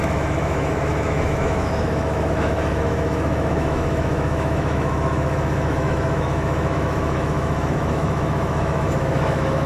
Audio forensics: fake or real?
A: fake